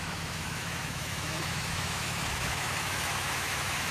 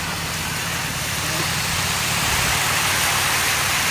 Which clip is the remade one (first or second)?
first